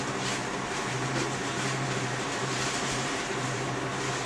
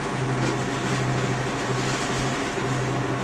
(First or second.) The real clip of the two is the second